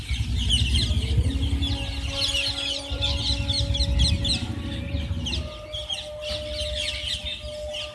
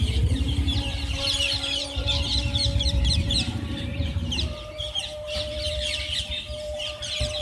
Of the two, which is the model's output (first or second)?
second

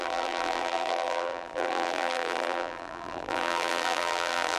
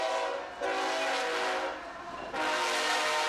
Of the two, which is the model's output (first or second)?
first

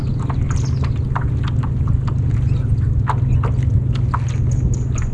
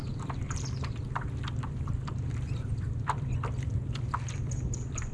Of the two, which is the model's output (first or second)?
second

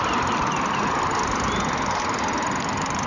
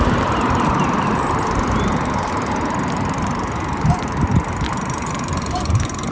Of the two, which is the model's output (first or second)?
second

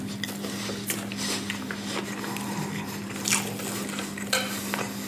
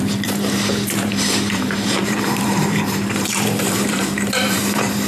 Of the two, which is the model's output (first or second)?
second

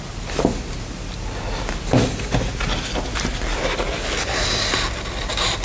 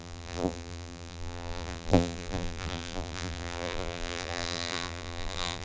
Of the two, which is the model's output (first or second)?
second